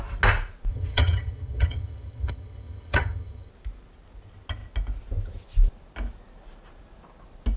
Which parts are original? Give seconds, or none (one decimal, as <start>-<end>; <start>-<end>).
0.0-0.7; 3.5-7.6